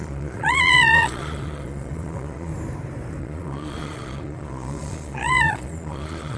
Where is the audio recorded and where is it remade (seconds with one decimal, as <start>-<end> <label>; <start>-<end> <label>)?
0.0-2.5 remade; 2.5-3.2 recorded; 3.2-6.4 remade